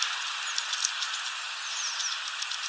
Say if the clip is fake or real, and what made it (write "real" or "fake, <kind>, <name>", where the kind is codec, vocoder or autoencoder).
real